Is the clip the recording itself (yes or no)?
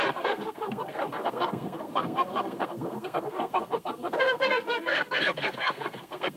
no